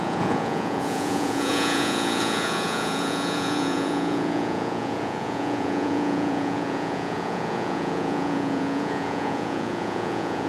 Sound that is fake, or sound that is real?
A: fake